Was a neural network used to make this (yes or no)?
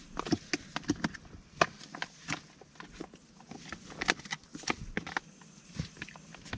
no